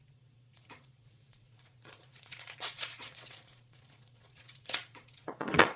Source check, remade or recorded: remade